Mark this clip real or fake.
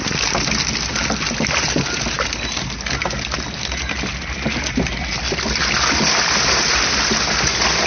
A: real